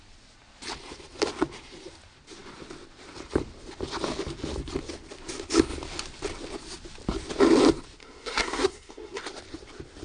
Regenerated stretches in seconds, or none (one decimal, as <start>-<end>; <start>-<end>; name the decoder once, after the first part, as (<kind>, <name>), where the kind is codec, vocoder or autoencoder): 8.0-9.2 (codec, SNAC)